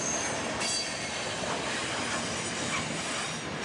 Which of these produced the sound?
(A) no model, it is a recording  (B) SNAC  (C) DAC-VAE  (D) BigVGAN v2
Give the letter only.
A